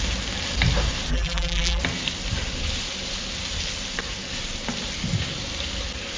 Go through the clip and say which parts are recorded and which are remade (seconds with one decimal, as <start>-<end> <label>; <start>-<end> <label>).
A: 0.0-1.1 recorded; 1.1-1.8 remade; 1.8-6.2 recorded